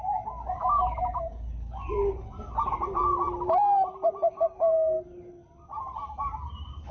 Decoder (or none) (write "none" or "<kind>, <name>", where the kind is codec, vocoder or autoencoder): none